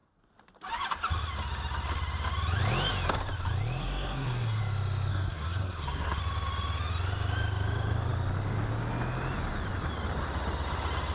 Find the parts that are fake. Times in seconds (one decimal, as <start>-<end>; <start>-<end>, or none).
3.8-4.6; 5.1-6.2